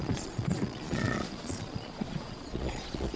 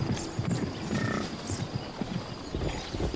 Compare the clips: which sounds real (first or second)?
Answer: second